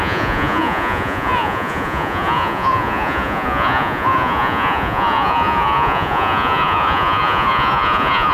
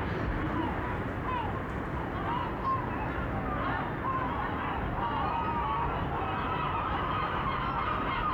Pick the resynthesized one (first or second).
first